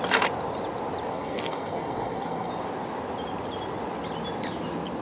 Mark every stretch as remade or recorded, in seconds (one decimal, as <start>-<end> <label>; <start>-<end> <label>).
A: 0.0-1.1 recorded; 1.1-2.5 remade; 2.5-5.0 recorded